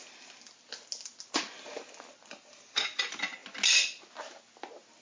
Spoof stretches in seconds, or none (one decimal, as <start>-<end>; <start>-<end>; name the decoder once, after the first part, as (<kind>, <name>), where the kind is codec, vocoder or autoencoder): none